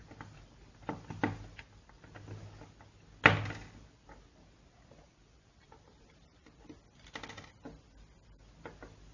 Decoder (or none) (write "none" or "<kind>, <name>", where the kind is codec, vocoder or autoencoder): none